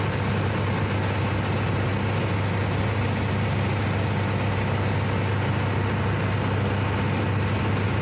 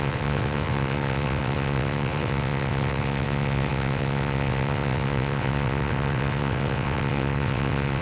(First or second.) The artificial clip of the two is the second